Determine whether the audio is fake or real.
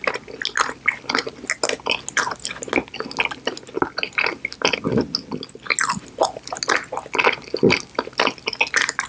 real